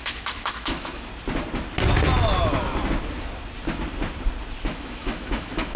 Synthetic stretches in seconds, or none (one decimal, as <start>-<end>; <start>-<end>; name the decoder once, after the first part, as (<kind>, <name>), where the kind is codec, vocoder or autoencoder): 0.0-1.1 (autoencoder, DAC-VAE); 4.6-5.8